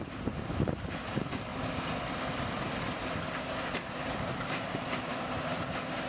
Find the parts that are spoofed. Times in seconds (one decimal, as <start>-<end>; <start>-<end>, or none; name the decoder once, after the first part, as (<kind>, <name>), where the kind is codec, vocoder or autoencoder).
0.0-1.5 (vocoder, BigVGAN v2); 4.2-5.5

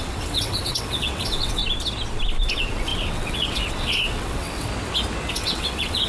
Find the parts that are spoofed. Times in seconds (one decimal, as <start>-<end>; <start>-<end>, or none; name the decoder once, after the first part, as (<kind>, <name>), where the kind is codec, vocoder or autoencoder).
0.0-1.6 (vocoder, WaveNeXt); 2.5-4.7; 5.3-6.1